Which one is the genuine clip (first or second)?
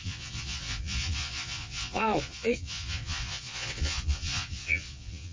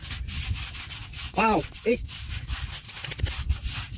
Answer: second